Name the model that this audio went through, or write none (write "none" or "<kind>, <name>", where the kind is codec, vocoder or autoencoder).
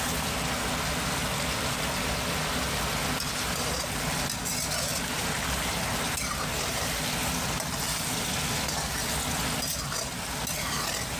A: none